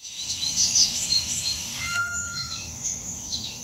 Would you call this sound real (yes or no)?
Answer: no